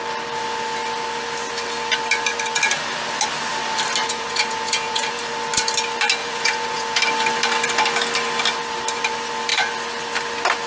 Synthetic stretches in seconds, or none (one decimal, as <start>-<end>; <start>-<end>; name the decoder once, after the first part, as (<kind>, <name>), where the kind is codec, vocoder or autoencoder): 4.0-5.3 (vocoder, Vocos); 6.2-7.0